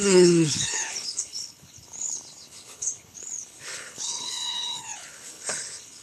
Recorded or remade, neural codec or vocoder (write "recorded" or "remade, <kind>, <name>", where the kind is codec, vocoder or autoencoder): remade, codec, HILCodec